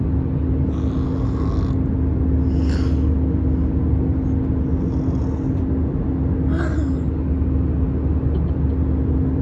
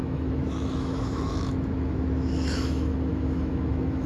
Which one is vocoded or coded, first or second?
second